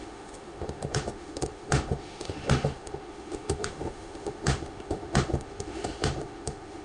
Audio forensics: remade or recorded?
remade